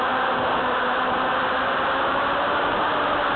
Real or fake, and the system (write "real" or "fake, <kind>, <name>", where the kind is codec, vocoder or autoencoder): fake, vocoder, BigVGAN v2